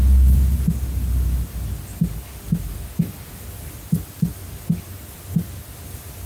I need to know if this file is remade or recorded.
recorded